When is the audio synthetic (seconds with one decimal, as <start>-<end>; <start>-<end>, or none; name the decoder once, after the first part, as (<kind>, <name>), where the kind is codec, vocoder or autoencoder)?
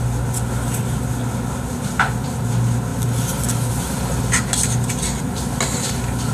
none